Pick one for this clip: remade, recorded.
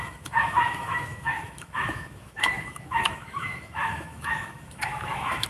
remade